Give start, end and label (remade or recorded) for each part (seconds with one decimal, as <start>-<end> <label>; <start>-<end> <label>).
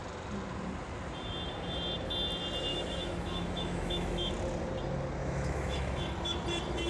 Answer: 0.0-2.7 recorded; 2.7-4.3 remade; 4.3-5.2 recorded; 5.2-6.0 remade; 6.0-6.9 recorded